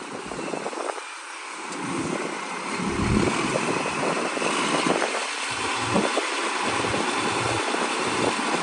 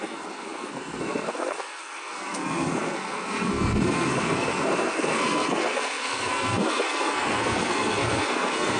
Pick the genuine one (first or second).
first